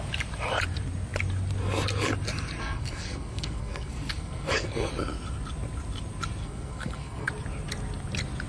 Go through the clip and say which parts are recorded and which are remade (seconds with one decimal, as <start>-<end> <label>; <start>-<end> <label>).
0.0-2.6 recorded; 2.6-4.9 remade; 4.9-6.4 recorded; 6.4-7.3 remade; 7.3-8.5 recorded

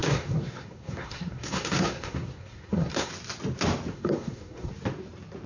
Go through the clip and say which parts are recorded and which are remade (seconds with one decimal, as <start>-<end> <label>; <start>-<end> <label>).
0.0-3.1 remade; 3.1-3.9 recorded; 3.9-4.7 remade; 4.7-5.5 recorded